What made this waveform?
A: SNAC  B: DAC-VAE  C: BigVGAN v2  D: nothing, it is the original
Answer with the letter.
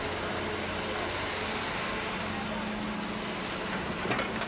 D